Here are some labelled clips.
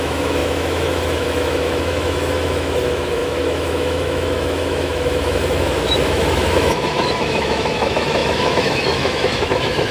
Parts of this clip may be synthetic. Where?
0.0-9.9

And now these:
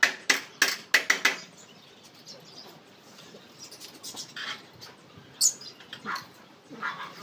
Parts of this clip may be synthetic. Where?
none

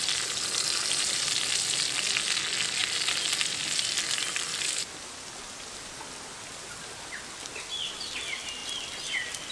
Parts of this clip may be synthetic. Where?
none